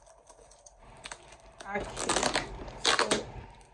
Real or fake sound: fake